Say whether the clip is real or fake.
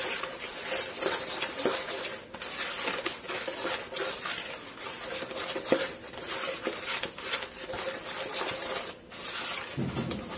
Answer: real